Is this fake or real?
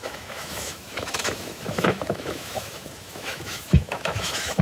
fake